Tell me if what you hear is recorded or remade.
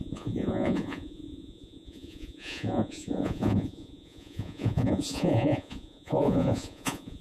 remade